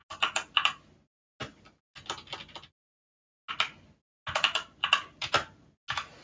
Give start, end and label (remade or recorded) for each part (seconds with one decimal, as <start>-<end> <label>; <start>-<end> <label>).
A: 0.0-6.2 recorded